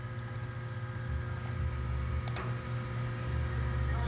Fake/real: real